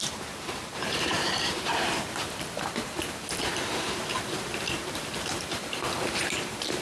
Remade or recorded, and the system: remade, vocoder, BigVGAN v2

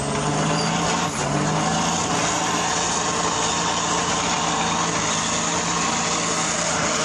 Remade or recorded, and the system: recorded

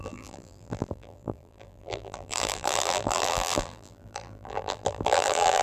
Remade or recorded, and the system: remade, vocoder, BigVGAN v2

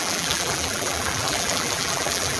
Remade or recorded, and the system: remade, vocoder, BigVGAN v2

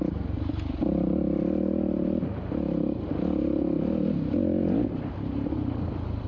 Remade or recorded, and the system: recorded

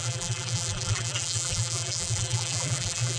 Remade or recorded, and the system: remade, vocoder, BigVGAN v2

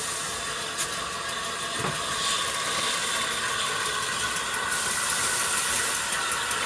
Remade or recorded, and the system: recorded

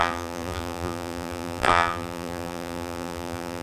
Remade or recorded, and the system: remade, vocoder, BigVGAN v2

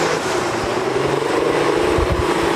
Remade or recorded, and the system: remade, vocoder, BigVGAN v2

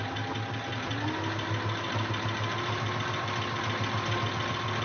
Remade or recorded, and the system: recorded